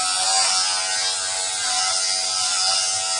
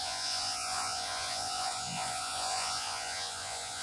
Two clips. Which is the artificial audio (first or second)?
second